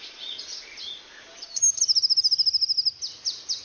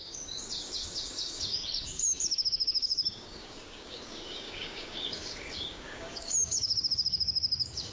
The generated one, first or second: second